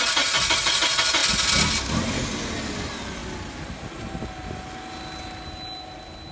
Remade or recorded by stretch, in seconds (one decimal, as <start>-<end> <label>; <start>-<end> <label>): 0.0-6.3 recorded